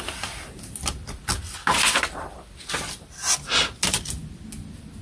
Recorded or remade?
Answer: recorded